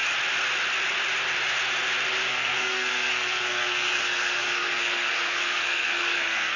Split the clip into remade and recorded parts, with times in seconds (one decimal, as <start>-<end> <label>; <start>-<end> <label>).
0.0-2.3 recorded; 2.3-6.6 remade

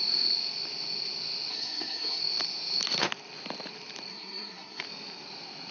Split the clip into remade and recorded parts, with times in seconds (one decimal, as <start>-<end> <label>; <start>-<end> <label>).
0.0-1.5 recorded; 1.5-2.2 remade; 2.2-4.1 recorded; 4.1-4.8 remade; 4.8-5.7 recorded

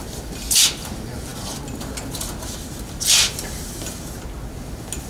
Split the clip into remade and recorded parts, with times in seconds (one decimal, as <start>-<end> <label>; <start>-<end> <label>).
0.0-5.1 recorded

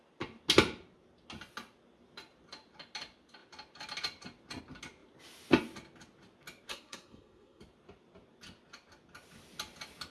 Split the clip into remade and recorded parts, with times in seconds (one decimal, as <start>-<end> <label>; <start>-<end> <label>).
0.0-6.7 recorded; 6.7-7.6 remade; 7.6-10.1 recorded